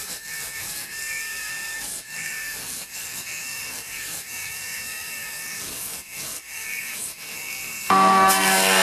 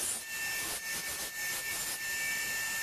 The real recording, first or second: second